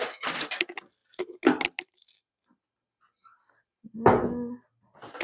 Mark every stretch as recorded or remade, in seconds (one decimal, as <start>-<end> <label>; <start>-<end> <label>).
0.0-5.2 recorded